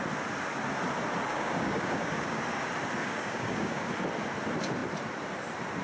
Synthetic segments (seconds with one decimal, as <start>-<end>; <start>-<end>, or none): 1.3-2.4; 3.0-3.9

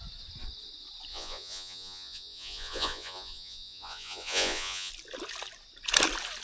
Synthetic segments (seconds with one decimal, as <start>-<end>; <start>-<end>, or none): 1.1-4.9

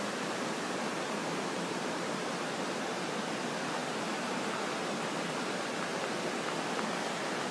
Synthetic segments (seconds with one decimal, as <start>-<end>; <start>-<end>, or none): 1.2-2.3

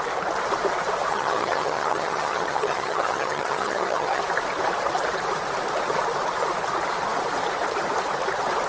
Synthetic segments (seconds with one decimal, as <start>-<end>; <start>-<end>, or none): 1.1-4.2

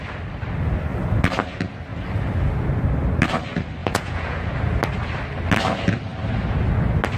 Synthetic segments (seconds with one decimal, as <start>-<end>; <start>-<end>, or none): 3.8-4.5

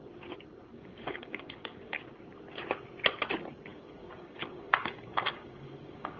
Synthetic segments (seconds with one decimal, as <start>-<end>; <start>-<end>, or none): 0.7-2.0; 3.7-6.2